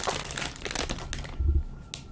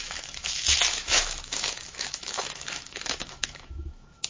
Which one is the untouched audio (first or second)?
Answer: first